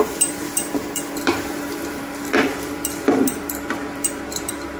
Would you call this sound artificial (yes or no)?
yes